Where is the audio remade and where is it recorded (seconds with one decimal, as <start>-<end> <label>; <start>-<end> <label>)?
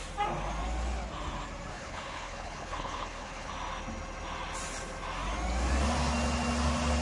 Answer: 0.0-1.7 recorded; 1.7-3.5 remade; 3.5-7.0 recorded